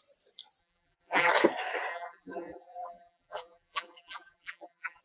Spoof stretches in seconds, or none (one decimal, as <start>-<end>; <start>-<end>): 0.6-1.3; 1.9-5.0